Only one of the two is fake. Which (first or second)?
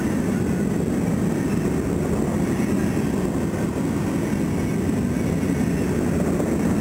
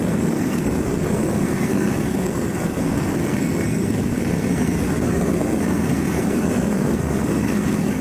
second